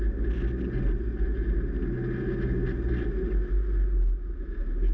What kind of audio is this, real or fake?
real